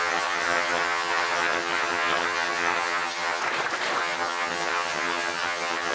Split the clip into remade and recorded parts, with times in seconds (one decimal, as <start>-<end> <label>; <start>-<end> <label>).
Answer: 0.0-3.4 remade; 3.4-4.0 recorded; 4.0-5.9 remade